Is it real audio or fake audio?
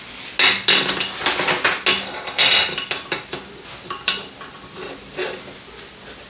real